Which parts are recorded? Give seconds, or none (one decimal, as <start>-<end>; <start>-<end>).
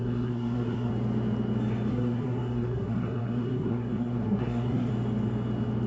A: 0.9-1.9; 4.9-5.9